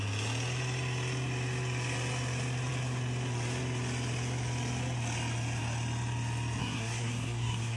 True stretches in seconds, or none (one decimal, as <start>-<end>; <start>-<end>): 0.0-6.6